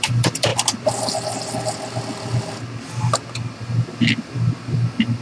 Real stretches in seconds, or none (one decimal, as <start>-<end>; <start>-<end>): 0.5-3.6